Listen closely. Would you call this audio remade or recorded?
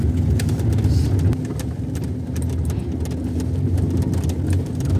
recorded